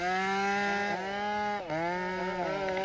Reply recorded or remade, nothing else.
recorded